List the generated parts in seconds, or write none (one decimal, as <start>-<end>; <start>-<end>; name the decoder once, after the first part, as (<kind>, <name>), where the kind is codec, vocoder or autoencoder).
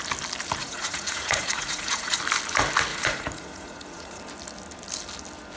0.6-2.2 (vocoder, Vocos); 2.9-4.2